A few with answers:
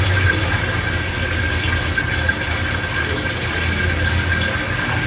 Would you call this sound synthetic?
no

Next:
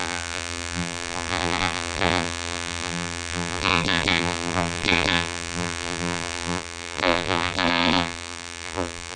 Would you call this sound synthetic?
yes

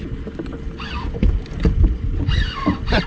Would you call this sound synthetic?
no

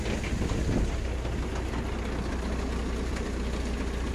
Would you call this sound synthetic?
no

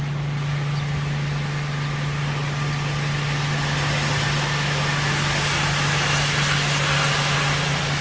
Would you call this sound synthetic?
no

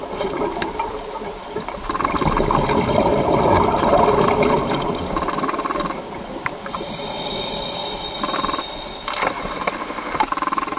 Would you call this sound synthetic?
yes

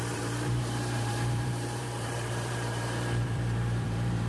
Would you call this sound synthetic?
yes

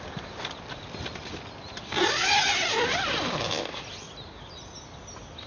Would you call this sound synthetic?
no